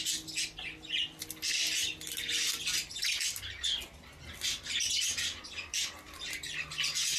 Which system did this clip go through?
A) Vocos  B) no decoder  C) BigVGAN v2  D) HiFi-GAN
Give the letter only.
B